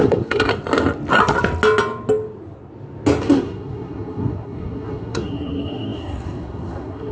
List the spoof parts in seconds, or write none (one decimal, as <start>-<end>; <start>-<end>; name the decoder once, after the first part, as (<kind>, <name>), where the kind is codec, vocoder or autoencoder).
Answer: 0.0-0.5 (codec, SNAC); 3.2-7.1